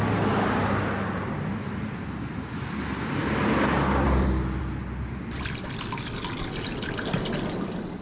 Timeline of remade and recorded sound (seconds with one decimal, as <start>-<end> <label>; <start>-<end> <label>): 0.0-3.2 recorded; 3.2-4.6 remade; 4.6-8.0 recorded